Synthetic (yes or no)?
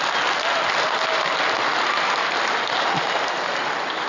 no